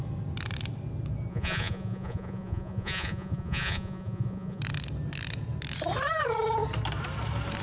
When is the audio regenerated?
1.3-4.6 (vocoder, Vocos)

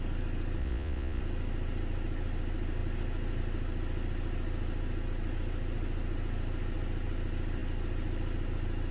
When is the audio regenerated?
0.6-1.2 (vocoder, Vocos)

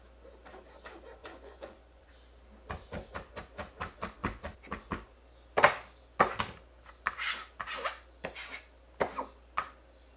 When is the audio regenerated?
1.2-2.1 (vocoder, Vocos)

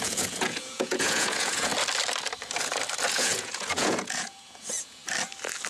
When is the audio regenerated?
0.0-1.7 (vocoder, Vocos); 3.1-5.0

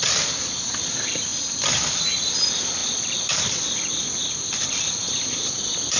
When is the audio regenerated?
none

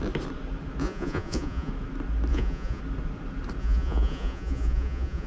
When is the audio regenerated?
0.8-1.7 (vocoder, Vocos); 2.3-2.8; 3.6-5.3

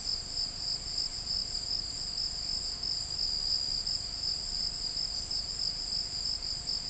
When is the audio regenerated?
none

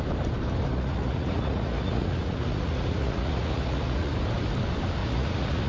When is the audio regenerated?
0.7-4.1 (vocoder, Vocos); 5.0-5.7